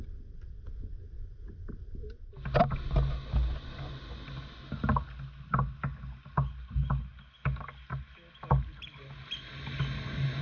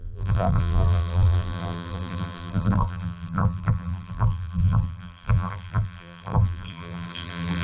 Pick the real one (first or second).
first